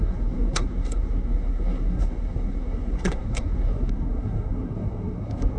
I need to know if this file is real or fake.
fake